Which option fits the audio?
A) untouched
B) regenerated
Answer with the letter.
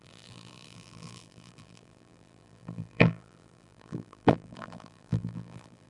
B